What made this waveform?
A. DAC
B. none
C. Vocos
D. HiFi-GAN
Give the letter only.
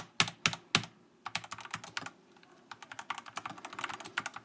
B